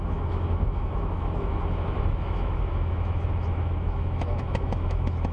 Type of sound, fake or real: fake